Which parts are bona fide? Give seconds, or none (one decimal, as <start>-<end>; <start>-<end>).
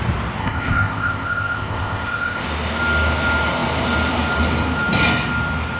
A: 0.0-0.4; 2.4-5.8